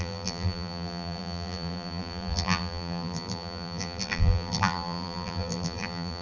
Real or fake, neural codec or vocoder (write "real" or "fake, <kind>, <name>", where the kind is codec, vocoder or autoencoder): fake, vocoder, BigVGAN v2